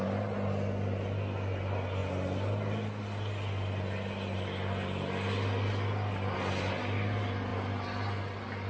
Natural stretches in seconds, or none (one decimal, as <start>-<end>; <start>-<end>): 0.0-8.7